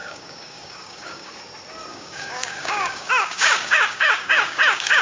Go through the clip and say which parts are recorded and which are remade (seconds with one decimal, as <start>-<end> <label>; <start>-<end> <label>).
0.0-1.3 remade; 1.3-1.9 recorded; 1.9-5.0 remade